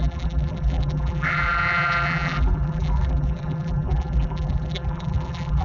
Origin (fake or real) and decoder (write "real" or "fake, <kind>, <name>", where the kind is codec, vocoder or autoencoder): fake, vocoder, BigVGAN v2